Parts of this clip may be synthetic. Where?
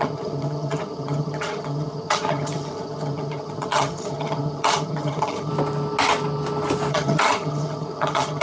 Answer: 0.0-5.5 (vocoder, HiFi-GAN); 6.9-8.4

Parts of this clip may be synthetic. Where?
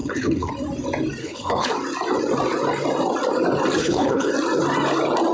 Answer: 0.0-0.5 (codec, HILCodec); 1.2-1.7; 3.8-4.3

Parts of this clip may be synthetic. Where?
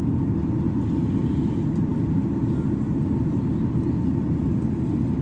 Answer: none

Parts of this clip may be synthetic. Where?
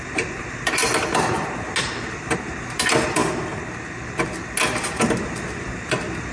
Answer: 0.0-0.8 (vocoder, BigVGAN v2); 2.1-3.2; 5.0-6.3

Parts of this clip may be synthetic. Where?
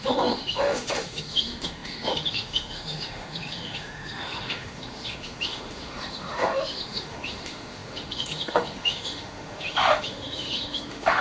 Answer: 0.0-11.2 (autoencoder, DAC-VAE)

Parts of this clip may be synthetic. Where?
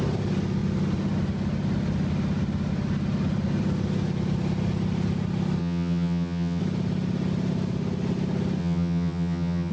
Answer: 5.6-6.6 (vocoder, HiFi-GAN); 8.6-9.7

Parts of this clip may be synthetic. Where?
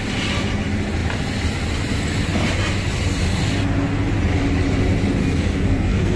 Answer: 5.2-6.2 (codec, SNAC)